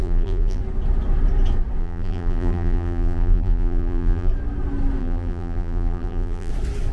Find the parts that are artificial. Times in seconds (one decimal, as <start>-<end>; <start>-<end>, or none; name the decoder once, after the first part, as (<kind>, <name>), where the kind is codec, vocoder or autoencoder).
0.0-0.6 (vocoder, BigVGAN v2); 1.8-4.3; 5.0-6.5